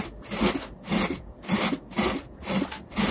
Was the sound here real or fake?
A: real